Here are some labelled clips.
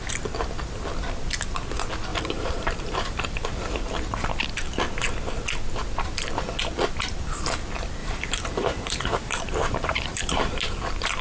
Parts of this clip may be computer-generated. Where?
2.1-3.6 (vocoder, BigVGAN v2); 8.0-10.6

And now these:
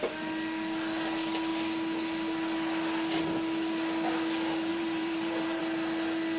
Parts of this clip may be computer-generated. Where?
4.7-5.6 (vocoder, BigVGAN v2)

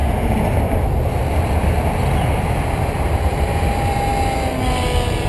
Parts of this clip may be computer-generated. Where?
3.2-4.1 (vocoder, BigVGAN v2)

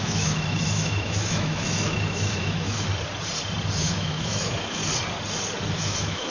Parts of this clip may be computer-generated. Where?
0.0-2.9 (autoencoder, DAC-VAE); 3.8-4.8; 5.7-6.3

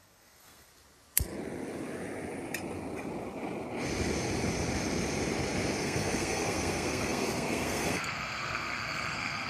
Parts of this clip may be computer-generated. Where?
0.0-0.7 (codec, SNAC); 5.8-9.5

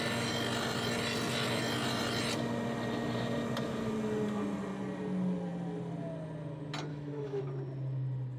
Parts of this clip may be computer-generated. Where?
6.9-7.4 (autoencoder, DAC-VAE)